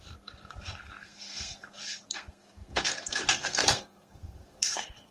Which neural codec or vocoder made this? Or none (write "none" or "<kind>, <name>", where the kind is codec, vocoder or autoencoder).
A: codec, SNAC